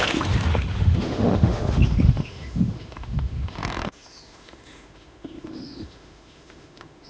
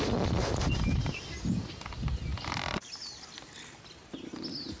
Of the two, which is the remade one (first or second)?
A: first